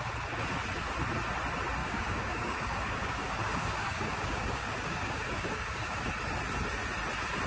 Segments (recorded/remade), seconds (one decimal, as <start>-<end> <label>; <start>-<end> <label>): 0.0-1.8 recorded; 1.8-6.0 remade; 6.0-7.5 recorded